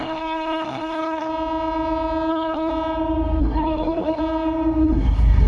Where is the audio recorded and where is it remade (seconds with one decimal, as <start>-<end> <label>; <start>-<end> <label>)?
0.0-1.3 remade; 1.3-2.3 recorded; 2.3-2.7 remade; 2.7-3.4 recorded; 3.4-4.2 remade; 4.2-4.8 recorded; 4.8-5.5 remade